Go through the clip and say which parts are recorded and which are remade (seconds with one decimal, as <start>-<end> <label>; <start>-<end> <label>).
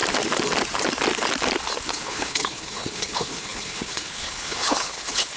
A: 0.0-1.9 recorded; 1.9-5.4 remade